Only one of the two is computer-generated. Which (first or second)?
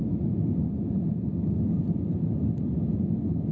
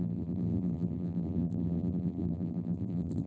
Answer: second